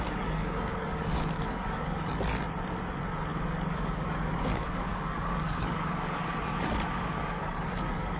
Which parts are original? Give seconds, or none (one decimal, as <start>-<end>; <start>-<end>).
2.1-3.7